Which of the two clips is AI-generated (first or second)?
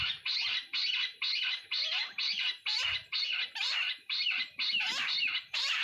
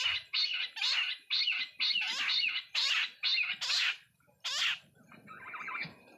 first